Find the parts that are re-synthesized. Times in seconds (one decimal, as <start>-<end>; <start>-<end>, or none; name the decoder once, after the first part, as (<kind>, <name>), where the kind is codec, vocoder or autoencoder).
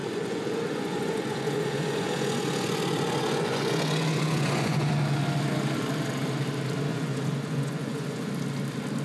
0.0-4.9 (vocoder, Vocos); 6.9-8.3